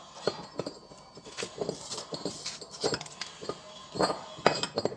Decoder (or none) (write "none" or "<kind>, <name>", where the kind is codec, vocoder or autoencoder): none